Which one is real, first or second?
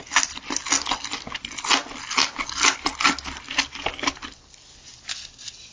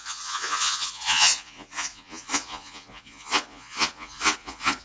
first